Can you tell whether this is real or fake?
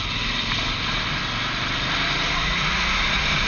real